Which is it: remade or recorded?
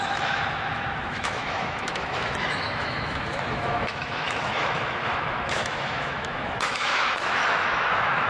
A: remade